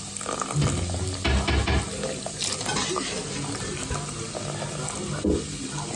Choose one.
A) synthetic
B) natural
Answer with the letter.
B